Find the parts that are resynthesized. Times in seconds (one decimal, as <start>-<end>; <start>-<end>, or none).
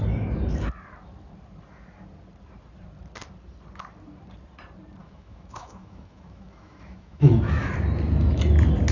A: 5.0-7.7